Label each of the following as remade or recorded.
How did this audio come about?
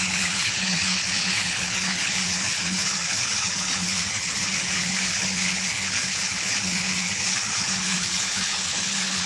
remade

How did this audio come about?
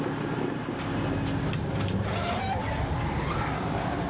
recorded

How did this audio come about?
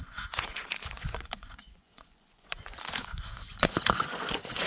remade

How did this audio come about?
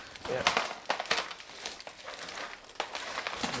recorded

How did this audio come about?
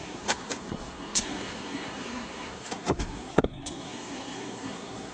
remade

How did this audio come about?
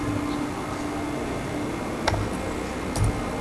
recorded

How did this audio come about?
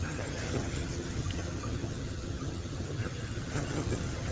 remade